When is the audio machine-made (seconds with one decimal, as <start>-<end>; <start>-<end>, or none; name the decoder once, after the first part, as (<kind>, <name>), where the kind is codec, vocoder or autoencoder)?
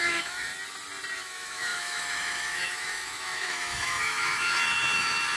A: 0.0-0.5 (autoencoder, DAC-VAE); 1.2-5.4